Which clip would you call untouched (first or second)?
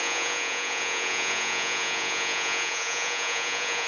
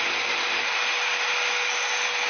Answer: second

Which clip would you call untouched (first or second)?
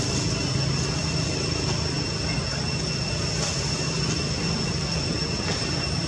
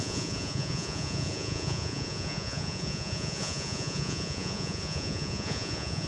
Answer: first